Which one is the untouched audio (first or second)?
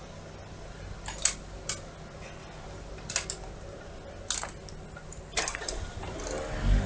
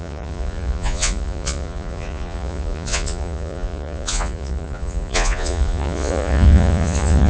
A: first